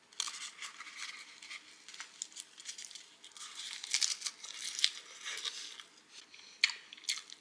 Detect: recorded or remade recorded